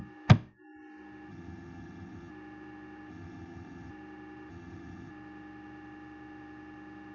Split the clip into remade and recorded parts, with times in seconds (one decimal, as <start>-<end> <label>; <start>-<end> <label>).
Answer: 0.0-1.3 recorded; 1.3-2.3 remade; 2.3-3.1 recorded; 3.1-3.9 remade; 3.9-4.5 recorded; 4.5-5.1 remade; 5.1-7.1 recorded